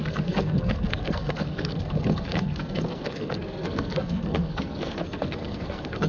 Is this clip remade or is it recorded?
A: remade